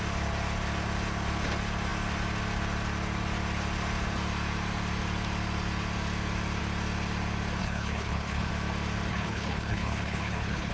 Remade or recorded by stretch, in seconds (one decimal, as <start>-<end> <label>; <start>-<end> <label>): 0.0-7.6 recorded; 7.6-8.5 remade; 8.5-9.1 recorded; 9.1-10.7 remade